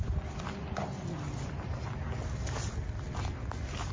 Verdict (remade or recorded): recorded